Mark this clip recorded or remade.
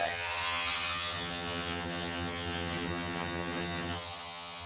remade